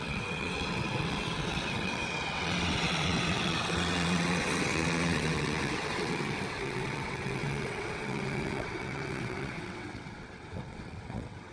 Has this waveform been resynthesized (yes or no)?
yes